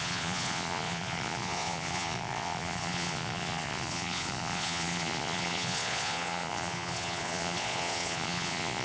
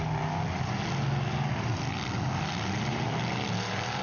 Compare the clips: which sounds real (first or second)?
second